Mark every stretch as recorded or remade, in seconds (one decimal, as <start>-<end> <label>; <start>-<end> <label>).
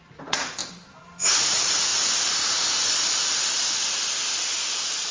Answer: 0.0-0.6 remade; 0.6-1.4 recorded; 1.4-1.9 remade; 1.9-5.1 recorded